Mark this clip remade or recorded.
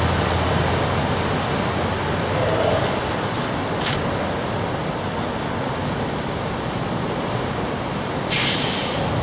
recorded